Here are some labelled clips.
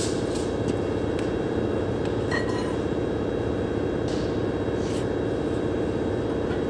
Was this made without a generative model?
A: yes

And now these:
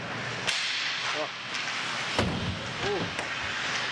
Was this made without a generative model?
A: yes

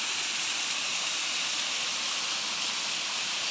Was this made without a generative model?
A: yes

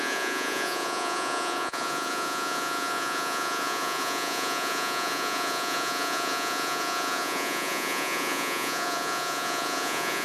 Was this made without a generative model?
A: no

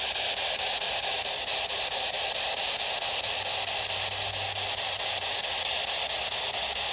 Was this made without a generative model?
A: yes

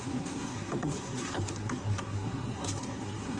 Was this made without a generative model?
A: no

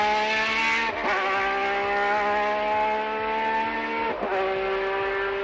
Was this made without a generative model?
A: yes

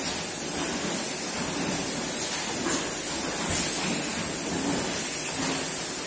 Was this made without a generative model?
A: yes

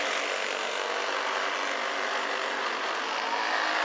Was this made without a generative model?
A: yes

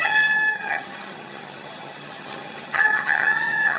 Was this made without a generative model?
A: no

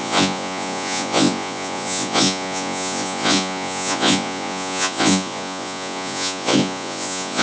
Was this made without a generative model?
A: no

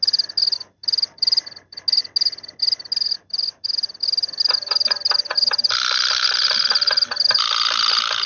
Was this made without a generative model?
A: yes